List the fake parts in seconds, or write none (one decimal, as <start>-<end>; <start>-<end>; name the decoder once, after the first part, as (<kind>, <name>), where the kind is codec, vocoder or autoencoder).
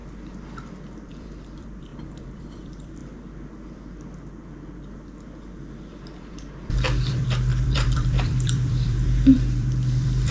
1.1-3.0 (vocoder, BigVGAN v2); 6.2-10.3